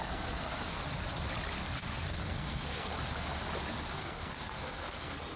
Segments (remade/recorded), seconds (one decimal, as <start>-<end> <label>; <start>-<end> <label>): 0.0-0.8 remade; 0.8-1.8 recorded; 1.8-2.9 remade; 2.9-3.9 recorded; 3.9-5.4 remade